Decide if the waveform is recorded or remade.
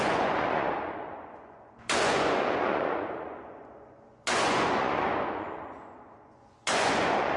remade